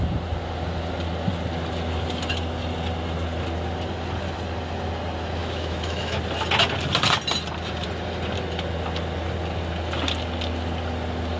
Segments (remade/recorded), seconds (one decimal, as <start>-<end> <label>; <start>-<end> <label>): 0.0-5.4 recorded; 5.4-6.2 remade; 6.2-11.4 recorded